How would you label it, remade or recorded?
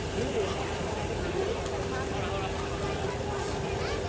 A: recorded